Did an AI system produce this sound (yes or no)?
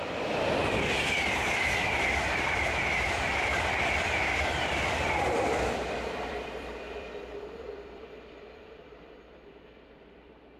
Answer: yes